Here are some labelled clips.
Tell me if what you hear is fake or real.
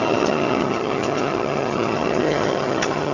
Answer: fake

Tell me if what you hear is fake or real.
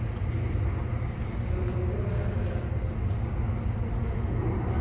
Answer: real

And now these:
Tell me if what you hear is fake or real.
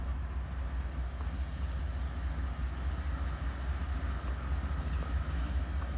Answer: real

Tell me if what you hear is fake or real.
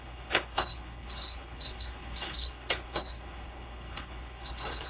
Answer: fake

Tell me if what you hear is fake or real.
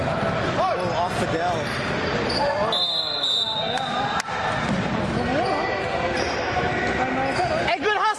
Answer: real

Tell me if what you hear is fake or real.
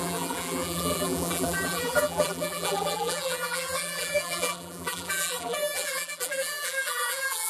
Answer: fake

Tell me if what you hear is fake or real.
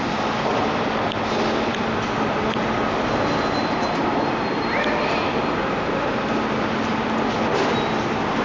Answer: real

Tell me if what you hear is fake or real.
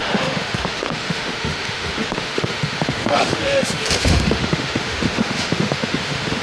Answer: fake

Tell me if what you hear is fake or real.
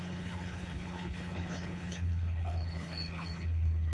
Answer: fake